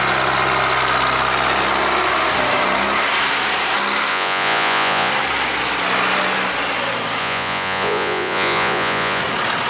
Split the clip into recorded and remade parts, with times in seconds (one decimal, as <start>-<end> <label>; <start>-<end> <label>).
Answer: 0.0-4.1 recorded; 4.1-5.1 remade; 5.1-7.2 recorded; 7.2-9.2 remade; 9.2-9.7 recorded